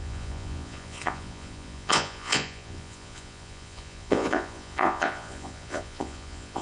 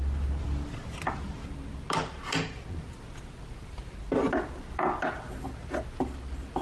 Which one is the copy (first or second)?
first